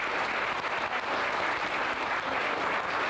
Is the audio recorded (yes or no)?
yes